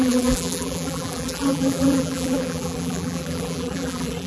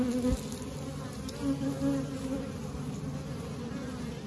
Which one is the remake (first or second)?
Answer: first